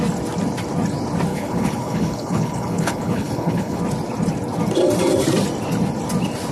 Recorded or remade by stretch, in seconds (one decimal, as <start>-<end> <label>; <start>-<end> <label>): 0.0-1.3 recorded; 1.3-3.8 remade; 3.8-6.5 recorded